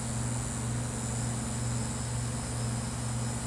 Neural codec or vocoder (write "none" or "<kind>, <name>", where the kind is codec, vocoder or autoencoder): none